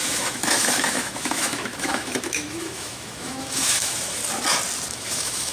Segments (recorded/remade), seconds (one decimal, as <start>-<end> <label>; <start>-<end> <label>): 0.0-4.2 remade; 4.2-4.9 recorded; 4.9-5.5 remade